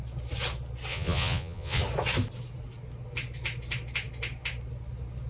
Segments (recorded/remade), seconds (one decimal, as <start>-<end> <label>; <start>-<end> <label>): 0.0-0.9 recorded; 0.9-1.8 remade; 1.8-5.3 recorded